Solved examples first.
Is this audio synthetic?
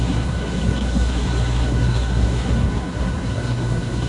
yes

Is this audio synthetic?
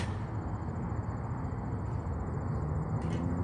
no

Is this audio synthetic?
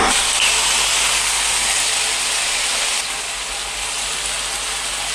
no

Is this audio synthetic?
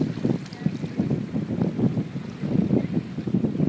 no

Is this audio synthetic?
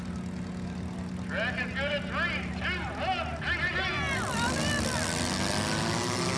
no